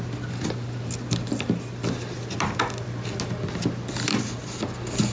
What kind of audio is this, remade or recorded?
recorded